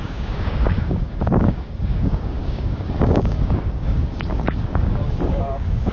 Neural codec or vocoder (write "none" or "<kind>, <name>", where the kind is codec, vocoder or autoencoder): codec, DAC